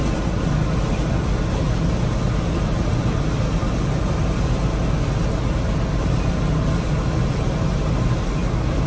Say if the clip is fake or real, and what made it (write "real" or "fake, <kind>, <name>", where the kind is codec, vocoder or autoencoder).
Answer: real